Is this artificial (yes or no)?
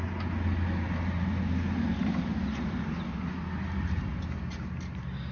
no